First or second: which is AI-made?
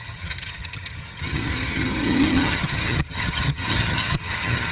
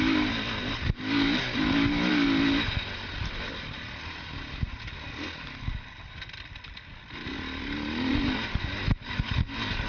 first